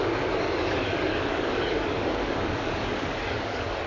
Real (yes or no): no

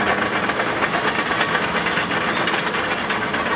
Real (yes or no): yes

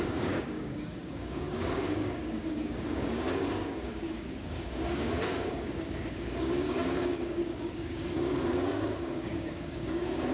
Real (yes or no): no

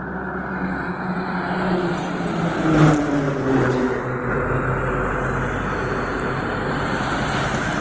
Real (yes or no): yes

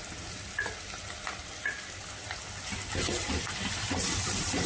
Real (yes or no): yes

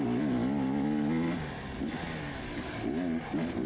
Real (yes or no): yes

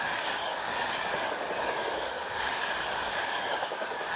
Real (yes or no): no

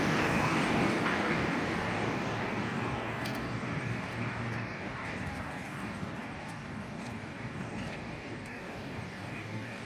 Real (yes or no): no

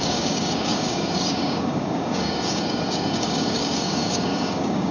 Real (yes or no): no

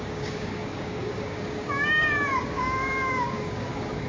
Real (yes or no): no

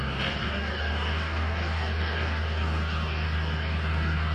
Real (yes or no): no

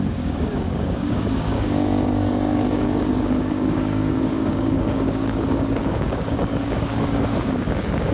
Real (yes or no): no